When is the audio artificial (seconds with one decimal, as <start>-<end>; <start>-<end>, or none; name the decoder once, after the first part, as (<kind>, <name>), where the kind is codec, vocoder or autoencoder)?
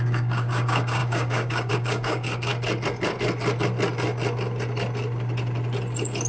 0.0-2.5 (codec, DAC)